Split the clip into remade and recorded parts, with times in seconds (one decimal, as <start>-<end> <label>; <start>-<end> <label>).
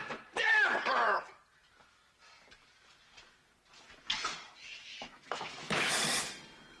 0.0-4.9 recorded; 4.9-5.9 remade; 5.9-6.8 recorded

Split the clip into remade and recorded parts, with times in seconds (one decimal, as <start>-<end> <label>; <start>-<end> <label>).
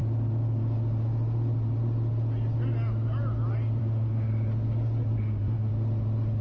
0.0-3.8 recorded; 3.8-4.3 remade; 4.3-5.2 recorded; 5.2-5.7 remade; 5.7-6.4 recorded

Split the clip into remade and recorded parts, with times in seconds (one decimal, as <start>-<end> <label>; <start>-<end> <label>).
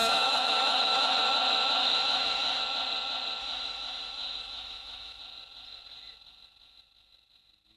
0.0-1.2 remade; 1.2-1.8 recorded; 1.8-2.6 remade; 2.6-3.4 recorded; 3.4-5.2 remade; 5.2-7.8 recorded